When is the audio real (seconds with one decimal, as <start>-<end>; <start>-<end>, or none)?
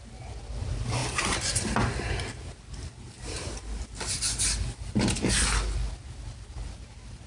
0.0-7.3